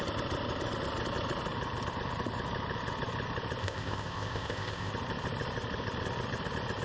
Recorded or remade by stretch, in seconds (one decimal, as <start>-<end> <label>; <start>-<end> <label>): 0.0-3.6 recorded; 3.6-4.9 remade; 4.9-6.8 recorded